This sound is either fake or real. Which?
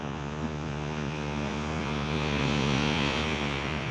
fake